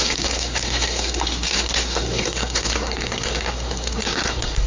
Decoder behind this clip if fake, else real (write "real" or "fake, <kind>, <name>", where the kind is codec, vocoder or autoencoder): fake, codec, SNAC